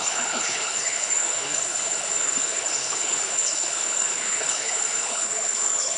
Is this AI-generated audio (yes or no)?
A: yes